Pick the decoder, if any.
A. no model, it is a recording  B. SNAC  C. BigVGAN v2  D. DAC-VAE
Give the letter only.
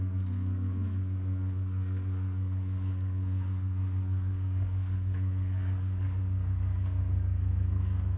B